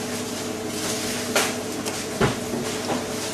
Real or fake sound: real